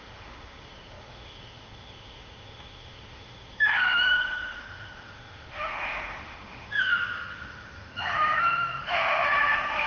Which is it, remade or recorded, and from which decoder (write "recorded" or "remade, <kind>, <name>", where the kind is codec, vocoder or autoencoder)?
remade, autoencoder, DAC-VAE